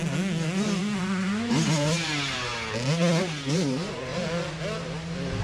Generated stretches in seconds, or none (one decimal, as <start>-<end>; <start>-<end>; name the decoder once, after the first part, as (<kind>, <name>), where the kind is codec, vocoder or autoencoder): 0.8-2.5 (vocoder, BigVGAN v2); 3.2-4.1